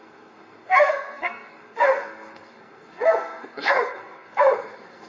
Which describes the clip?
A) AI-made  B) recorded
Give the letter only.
A